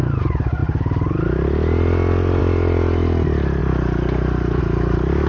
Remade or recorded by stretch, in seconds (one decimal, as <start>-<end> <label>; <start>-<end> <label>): 0.0-5.3 recorded